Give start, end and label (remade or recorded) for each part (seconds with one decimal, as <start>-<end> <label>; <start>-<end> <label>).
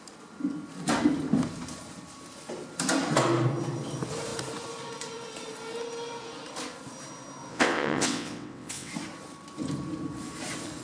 0.0-7.5 recorded; 7.5-8.9 remade; 8.9-10.8 recorded